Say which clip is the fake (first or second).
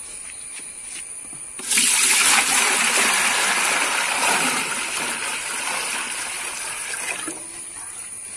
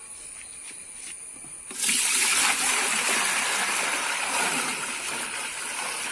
second